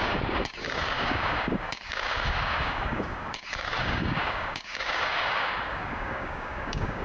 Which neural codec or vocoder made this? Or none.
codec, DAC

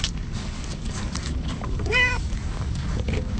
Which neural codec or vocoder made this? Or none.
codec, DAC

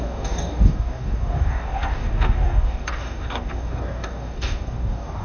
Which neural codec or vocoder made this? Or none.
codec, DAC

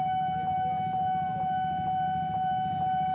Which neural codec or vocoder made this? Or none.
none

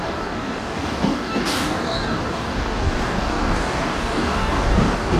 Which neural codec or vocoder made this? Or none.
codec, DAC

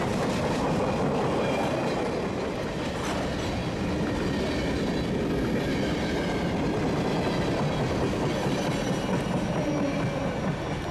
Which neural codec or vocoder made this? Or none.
none